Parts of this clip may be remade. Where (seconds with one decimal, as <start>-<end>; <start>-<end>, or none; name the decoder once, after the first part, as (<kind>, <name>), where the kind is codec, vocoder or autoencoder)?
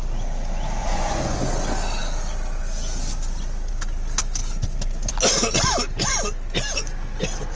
0.8-1.4 (vocoder, Vocos)